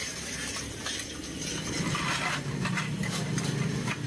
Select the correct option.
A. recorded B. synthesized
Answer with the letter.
A